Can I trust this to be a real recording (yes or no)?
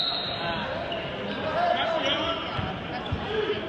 yes